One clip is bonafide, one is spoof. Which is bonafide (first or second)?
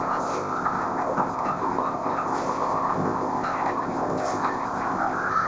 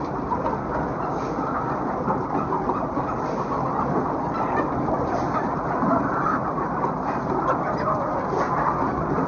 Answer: second